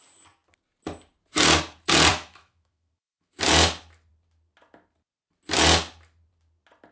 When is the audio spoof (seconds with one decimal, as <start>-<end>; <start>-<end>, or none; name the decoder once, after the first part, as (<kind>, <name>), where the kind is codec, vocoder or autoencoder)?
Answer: 2.1-3.4 (autoencoder, DAC-VAE)